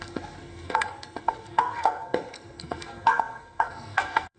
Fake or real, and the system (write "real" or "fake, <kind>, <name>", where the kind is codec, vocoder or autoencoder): fake, codec, SNAC